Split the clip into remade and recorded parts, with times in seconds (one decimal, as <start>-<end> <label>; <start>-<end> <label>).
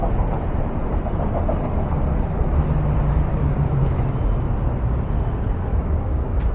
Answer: 0.0-3.3 recorded; 3.3-4.0 remade; 4.0-5.7 recorded; 5.7-6.5 remade